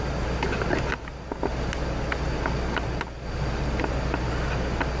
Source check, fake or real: real